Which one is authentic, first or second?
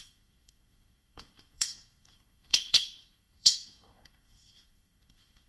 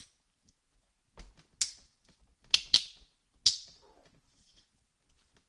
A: second